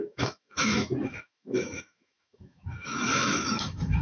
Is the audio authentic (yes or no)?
no